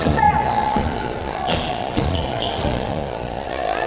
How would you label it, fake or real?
fake